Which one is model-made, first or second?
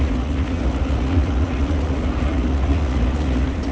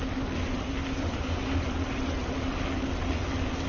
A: first